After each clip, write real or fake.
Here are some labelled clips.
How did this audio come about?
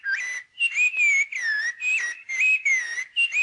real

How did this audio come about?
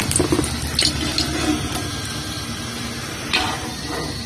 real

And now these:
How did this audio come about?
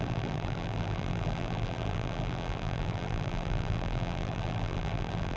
fake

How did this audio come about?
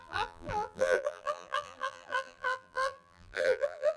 fake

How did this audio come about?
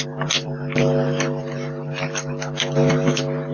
fake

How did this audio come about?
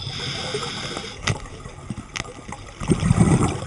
real